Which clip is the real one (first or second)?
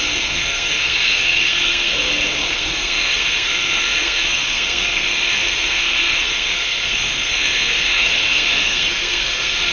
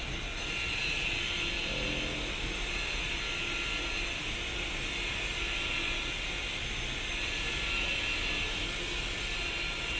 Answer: second